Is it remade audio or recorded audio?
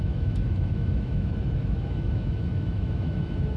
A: remade